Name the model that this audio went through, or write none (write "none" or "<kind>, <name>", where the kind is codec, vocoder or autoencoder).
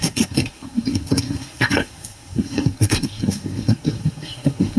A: codec, SNAC